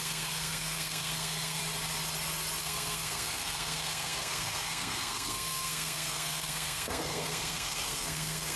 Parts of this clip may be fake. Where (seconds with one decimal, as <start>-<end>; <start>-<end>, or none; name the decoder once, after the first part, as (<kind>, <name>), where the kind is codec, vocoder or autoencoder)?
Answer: 0.0-1.6 (codec, SNAC); 2.6-8.6